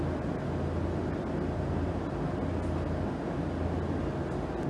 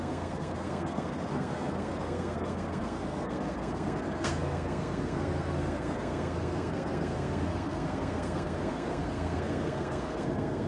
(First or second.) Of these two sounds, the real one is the first